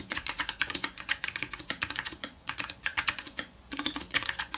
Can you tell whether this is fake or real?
fake